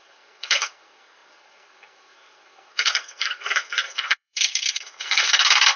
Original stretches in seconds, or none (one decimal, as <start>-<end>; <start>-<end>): none

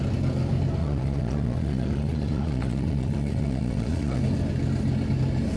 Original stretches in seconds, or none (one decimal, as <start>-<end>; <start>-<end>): 0.0-0.8; 4.2-5.6

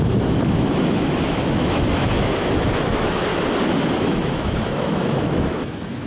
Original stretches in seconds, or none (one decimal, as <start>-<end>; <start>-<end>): 3.3-4.0

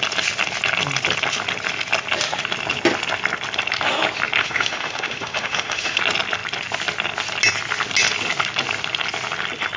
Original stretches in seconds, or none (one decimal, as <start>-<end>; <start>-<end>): 0.0-4.4; 6.0-9.8

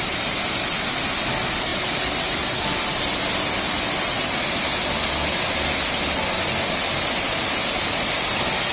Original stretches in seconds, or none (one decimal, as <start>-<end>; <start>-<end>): 0.0-8.7

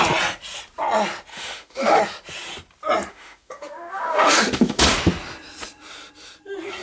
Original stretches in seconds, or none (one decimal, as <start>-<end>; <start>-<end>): 0.0-1.3; 2.0-3.1; 4.8-6.8

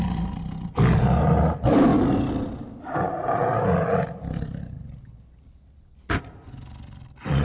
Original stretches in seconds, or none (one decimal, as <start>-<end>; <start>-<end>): 0.0-7.4

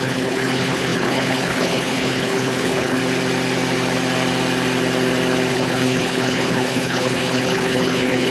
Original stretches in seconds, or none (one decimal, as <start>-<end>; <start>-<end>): 3.0-5.5